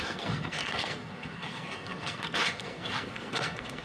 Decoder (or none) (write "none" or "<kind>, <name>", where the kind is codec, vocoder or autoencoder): codec, SNAC